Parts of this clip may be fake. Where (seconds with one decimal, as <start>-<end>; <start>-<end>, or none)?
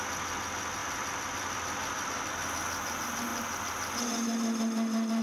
0.8-2.1